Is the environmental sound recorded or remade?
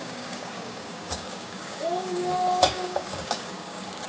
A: remade